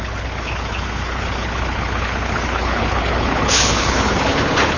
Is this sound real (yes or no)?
no